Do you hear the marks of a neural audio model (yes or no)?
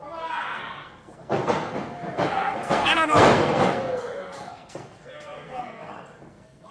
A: yes